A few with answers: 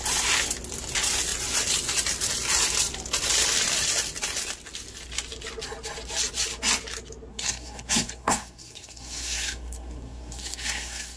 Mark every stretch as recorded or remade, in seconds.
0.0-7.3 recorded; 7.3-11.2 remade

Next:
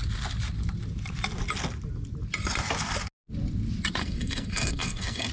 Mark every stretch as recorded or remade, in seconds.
0.0-4.0 recorded; 4.0-5.3 remade